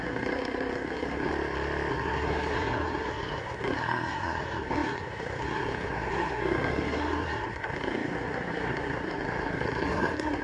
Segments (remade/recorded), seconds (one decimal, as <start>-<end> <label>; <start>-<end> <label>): 0.0-1.3 remade; 1.3-1.9 recorded; 1.9-10.4 remade

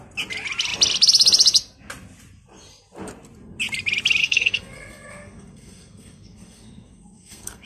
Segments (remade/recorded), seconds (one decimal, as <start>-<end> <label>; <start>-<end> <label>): 0.0-4.2 recorded; 4.2-7.7 remade

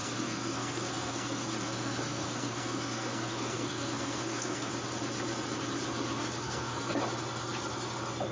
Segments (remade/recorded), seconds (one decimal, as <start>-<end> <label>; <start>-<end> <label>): 0.0-4.7 remade; 4.7-6.2 recorded; 6.2-6.9 remade; 6.9-8.3 recorded

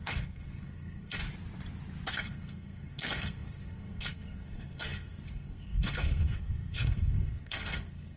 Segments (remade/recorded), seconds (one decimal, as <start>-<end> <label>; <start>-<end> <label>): 0.0-1.2 remade; 1.2-2.1 recorded; 2.1-8.2 remade

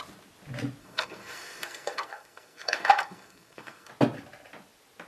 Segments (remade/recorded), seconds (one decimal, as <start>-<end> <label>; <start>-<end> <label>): 0.0-0.8 recorded; 0.8-3.9 remade; 3.9-5.1 recorded